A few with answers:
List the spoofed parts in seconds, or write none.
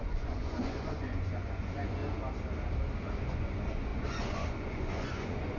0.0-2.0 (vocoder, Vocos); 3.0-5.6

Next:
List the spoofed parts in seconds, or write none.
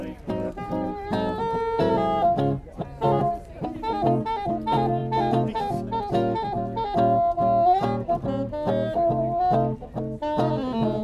none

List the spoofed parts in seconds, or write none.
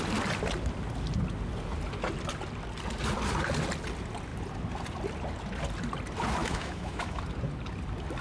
6.4-7.2 (autoencoder, DAC-VAE)